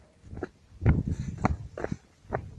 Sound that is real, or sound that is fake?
real